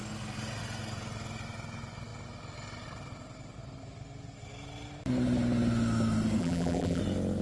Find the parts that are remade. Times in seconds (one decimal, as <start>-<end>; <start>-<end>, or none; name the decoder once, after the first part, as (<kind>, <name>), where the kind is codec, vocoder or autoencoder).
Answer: 6.4-7.0 (vocoder, BigVGAN v2)